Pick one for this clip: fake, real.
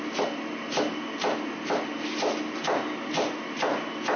real